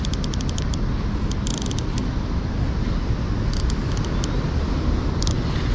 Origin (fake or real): real